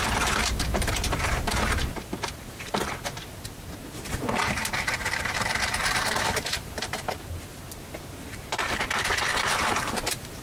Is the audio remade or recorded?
remade